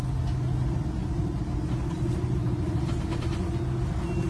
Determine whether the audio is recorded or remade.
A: recorded